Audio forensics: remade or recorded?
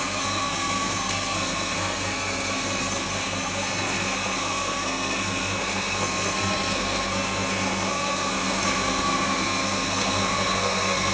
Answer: remade